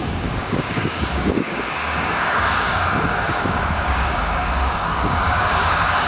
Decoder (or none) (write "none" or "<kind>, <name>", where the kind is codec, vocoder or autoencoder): codec, DAC